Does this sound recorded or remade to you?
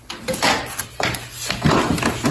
recorded